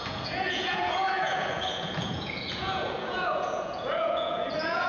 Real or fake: fake